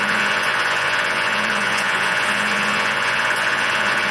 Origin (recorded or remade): remade